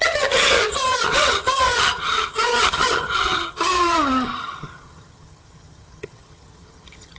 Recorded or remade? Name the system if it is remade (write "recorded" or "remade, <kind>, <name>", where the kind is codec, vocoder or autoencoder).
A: remade, vocoder, HiFi-GAN